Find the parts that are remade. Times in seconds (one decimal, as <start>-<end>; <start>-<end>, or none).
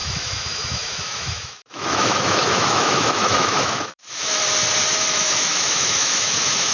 0.0-4.4; 5.1-6.7